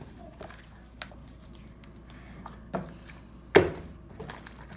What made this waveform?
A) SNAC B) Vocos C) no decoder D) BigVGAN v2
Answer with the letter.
C